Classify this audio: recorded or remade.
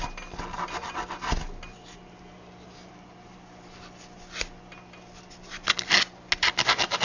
recorded